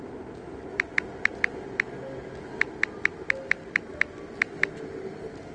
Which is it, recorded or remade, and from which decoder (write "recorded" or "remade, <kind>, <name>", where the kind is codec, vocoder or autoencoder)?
recorded